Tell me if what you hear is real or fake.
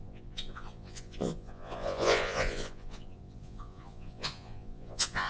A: fake